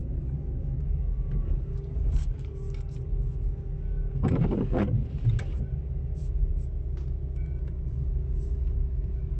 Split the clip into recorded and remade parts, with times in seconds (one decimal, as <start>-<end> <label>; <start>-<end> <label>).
0.0-5.0 remade; 5.0-5.7 recorded; 5.7-6.5 remade; 6.5-7.9 recorded; 7.9-9.4 remade